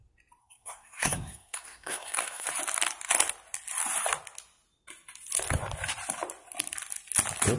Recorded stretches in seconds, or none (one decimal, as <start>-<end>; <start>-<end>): 0.0-0.4; 2.5-7.6